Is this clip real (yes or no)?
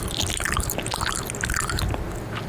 yes